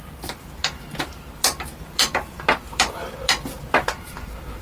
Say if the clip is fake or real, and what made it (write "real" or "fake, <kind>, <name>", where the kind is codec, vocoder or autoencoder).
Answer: fake, vocoder, BigVGAN v2